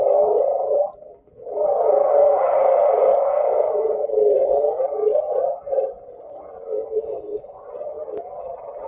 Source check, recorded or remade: recorded